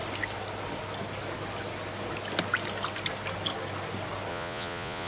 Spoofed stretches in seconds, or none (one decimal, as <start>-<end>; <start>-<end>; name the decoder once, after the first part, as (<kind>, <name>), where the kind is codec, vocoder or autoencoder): 4.3-5.1 (vocoder, Vocos)